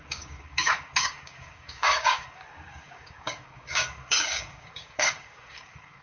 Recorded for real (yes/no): no